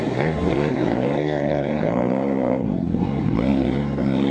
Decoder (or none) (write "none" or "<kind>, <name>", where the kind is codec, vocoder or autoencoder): codec, SNAC